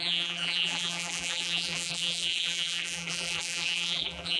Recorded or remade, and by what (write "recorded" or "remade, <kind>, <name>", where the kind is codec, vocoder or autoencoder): remade, vocoder, BigVGAN v2